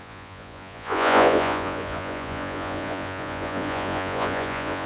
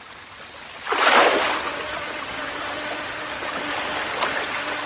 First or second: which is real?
second